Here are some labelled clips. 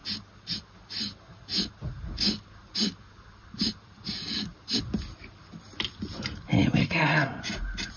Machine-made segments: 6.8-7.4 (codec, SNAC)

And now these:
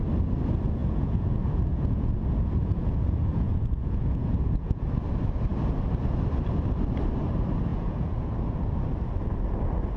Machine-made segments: 0.8-4.9 (vocoder, Vocos); 7.7-8.3

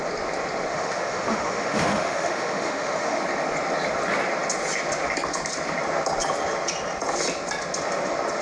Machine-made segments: 0.7-3.2 (autoencoder, DAC-VAE)

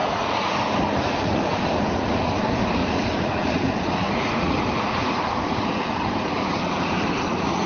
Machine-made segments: 0.0-2.4 (vocoder, Vocos); 2.8-7.7

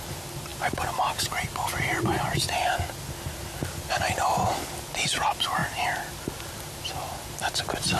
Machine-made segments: none

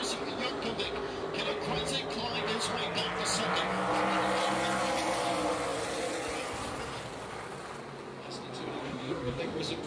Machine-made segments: 8.8-9.4 (codec, SNAC)